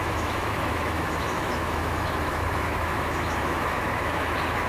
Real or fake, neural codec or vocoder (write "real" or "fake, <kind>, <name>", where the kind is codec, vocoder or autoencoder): fake, autoencoder, DAC-VAE